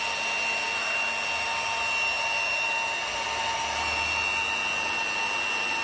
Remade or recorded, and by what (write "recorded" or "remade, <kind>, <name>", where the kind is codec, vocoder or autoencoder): recorded